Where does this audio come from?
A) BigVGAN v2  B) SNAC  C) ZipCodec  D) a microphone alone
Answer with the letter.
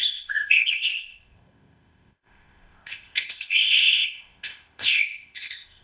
C